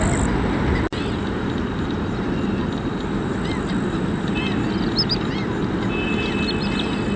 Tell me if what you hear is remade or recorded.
recorded